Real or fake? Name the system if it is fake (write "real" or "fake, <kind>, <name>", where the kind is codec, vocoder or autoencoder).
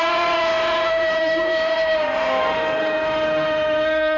fake, autoencoder, DAC-VAE